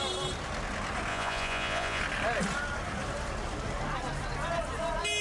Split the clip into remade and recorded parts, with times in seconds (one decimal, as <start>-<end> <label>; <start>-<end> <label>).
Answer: 0.0-1.1 recorded; 1.1-2.0 remade; 2.0-5.2 recorded